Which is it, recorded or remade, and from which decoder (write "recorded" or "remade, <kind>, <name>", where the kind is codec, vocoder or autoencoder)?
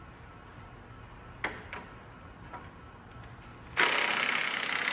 recorded